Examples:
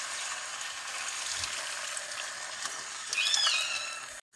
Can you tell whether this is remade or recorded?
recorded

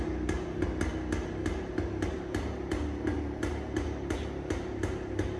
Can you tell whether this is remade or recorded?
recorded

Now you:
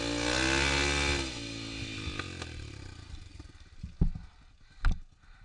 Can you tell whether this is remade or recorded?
recorded